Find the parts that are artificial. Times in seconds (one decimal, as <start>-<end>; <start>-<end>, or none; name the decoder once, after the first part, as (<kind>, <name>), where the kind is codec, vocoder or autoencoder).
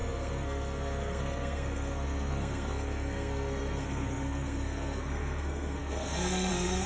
0.0-6.9 (codec, SNAC)